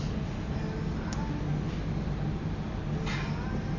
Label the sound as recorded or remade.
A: recorded